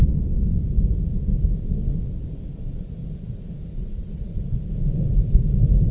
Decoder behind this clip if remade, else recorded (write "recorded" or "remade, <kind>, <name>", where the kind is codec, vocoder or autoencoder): recorded